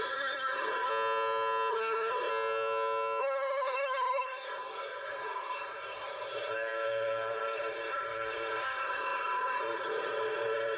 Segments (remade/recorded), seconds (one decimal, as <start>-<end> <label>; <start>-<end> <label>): 0.0-0.9 remade; 0.9-1.7 recorded; 1.7-2.3 remade; 2.3-3.2 recorded; 3.2-10.8 remade